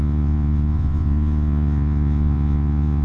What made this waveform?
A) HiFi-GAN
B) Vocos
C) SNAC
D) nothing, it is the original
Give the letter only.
B